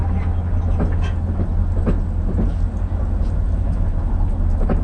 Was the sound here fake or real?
real